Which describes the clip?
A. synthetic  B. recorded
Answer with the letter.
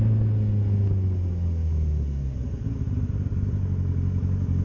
B